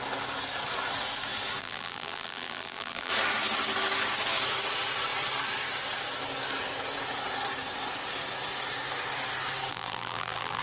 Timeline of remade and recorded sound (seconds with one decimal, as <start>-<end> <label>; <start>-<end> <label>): 0.0-1.6 recorded; 1.6-3.1 remade; 3.1-9.7 recorded; 9.7-10.6 remade